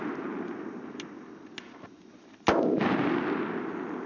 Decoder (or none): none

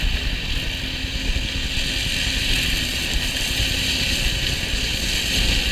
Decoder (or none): none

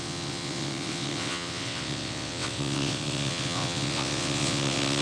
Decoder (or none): vocoder, WaveNeXt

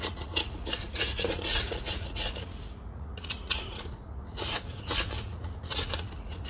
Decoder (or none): vocoder, Vocos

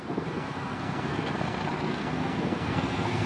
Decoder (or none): codec, SNAC